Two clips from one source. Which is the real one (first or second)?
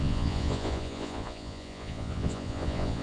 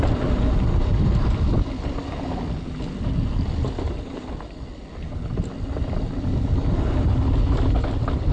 second